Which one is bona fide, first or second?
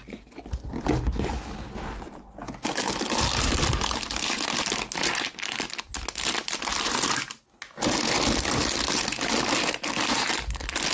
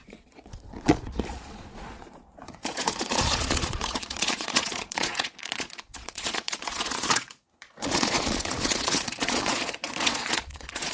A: first